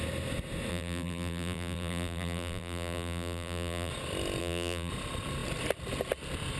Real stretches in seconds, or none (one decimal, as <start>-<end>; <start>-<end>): 0.0-0.7; 3.9-4.4; 4.9-6.6